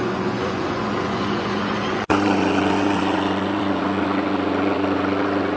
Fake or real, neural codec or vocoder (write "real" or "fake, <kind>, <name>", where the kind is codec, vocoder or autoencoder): fake, vocoder, Vocos